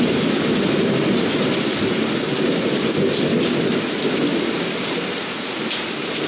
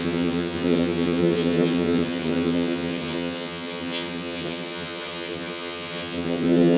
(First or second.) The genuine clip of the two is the first